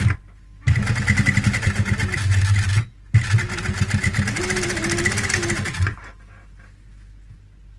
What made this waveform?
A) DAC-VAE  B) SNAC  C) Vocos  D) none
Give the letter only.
D